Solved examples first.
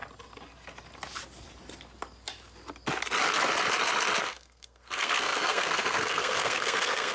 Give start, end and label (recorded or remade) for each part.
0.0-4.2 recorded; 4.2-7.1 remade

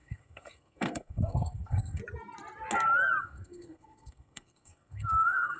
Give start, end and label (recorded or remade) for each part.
0.0-2.0 remade; 2.0-3.2 recorded; 3.2-5.6 remade

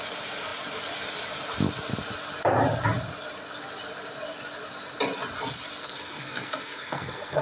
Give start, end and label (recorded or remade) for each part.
0.0-5.8 recorded; 5.8-7.4 remade

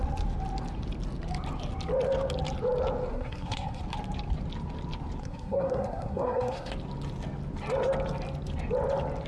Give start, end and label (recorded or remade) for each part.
0.0-3.1 recorded; 3.1-3.8 remade; 3.8-5.2 recorded; 5.2-6.7 remade; 6.7-9.3 recorded